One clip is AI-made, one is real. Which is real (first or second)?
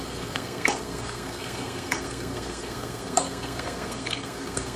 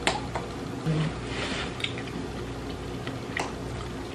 second